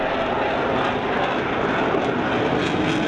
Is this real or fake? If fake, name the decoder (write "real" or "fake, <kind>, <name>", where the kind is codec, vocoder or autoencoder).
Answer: real